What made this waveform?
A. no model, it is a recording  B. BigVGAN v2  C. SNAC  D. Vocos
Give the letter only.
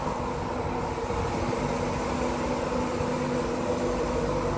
A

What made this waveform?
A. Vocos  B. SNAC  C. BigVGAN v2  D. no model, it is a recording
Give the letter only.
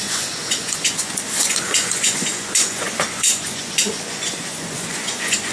A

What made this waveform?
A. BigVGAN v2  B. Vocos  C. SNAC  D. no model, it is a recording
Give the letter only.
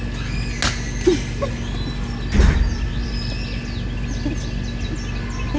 D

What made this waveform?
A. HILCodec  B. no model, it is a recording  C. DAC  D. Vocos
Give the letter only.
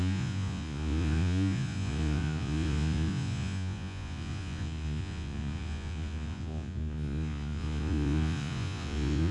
D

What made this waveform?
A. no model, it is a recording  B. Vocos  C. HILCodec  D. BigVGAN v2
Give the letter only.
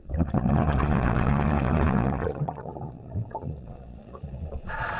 B